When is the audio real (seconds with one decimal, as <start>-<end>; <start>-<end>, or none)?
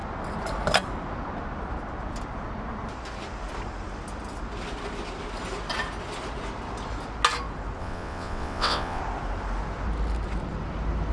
0.0-7.8; 9.0-11.1